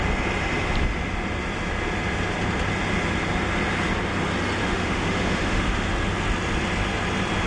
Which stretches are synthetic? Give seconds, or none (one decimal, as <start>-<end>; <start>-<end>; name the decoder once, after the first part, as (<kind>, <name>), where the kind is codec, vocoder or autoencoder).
4.6-5.9 (autoencoder, DAC-VAE)